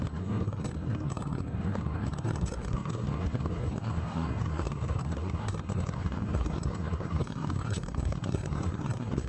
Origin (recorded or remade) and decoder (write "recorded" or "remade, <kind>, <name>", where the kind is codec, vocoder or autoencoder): remade, codec, SNAC